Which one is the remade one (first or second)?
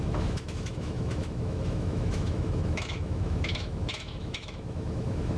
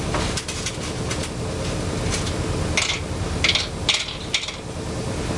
first